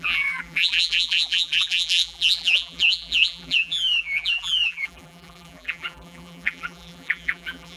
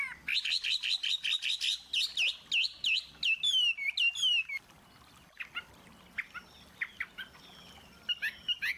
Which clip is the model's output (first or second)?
first